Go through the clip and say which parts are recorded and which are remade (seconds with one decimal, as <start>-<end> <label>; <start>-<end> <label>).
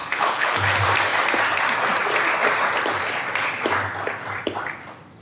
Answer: 0.0-0.7 remade; 0.7-5.2 recorded